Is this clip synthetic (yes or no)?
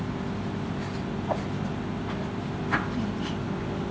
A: no